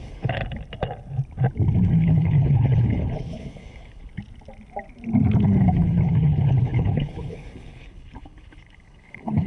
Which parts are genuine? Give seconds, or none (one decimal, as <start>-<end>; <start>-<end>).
0.4-2.0; 4.1-5.6